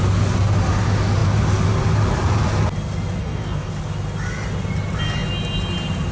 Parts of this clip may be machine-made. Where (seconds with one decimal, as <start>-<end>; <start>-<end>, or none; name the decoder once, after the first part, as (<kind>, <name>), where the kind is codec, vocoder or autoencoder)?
3.2-3.7 (codec, DAC)